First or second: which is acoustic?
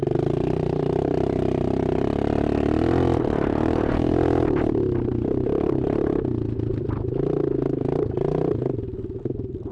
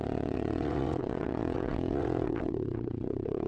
first